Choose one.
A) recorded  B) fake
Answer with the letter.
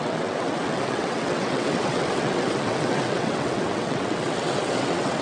B